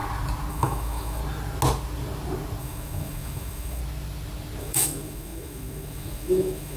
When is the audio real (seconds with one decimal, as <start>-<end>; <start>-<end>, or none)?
0.0-0.5; 1.2-2.6; 3.8-4.6